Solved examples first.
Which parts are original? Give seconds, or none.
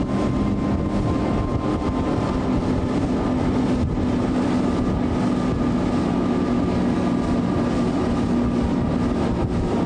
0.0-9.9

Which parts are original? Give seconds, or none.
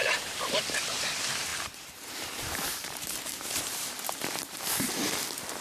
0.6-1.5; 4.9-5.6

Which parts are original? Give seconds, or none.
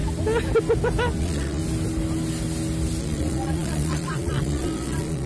0.0-1.2; 1.6-3.0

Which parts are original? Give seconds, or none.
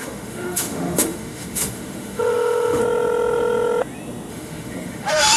2.8-4.3